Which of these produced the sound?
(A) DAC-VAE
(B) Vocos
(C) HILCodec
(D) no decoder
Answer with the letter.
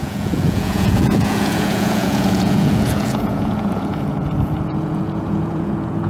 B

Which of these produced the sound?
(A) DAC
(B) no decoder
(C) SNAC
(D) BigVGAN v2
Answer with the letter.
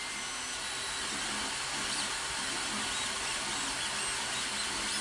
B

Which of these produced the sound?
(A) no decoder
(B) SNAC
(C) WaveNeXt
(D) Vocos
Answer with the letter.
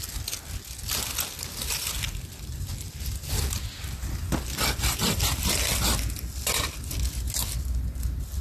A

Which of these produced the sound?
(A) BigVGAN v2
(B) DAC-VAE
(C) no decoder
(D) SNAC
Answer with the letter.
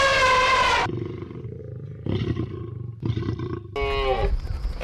C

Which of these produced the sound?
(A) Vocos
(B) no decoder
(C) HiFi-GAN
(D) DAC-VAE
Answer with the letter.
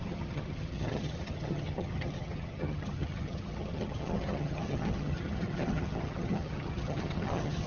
C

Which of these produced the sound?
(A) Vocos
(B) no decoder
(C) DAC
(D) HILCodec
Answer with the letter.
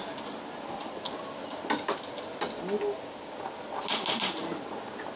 B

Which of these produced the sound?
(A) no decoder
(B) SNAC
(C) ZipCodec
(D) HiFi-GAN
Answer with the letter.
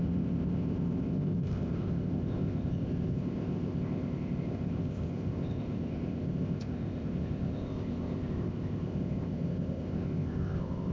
C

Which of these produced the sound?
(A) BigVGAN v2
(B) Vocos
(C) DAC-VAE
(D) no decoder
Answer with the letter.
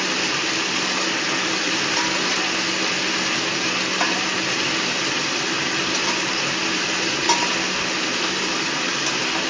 D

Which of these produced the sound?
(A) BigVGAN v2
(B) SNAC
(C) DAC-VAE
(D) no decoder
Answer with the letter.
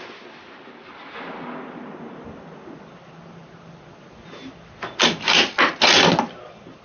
D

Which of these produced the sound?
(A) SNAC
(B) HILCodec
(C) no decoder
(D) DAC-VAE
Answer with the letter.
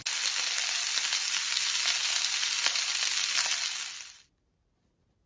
C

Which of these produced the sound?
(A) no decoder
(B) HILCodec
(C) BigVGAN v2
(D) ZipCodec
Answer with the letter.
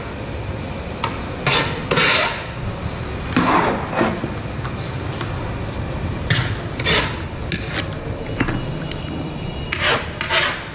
A